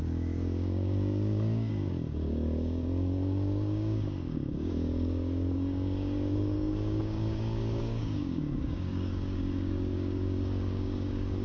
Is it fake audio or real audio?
fake